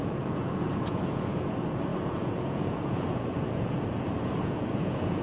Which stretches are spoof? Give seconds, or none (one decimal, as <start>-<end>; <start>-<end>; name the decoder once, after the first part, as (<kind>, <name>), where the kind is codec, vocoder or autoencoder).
0.0-5.2 (vocoder, Vocos)